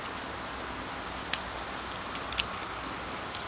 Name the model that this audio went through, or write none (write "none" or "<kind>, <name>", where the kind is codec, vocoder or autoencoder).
none